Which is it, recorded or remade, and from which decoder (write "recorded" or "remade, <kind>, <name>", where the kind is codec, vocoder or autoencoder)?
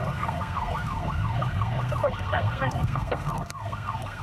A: remade, codec, SNAC